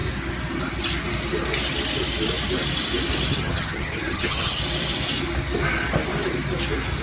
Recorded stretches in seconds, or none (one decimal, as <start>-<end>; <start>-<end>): 0.0-3.3; 4.6-7.0